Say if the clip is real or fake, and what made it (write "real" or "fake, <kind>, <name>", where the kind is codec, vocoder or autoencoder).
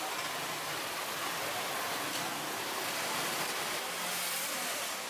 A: real